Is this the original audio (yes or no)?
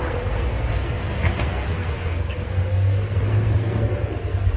no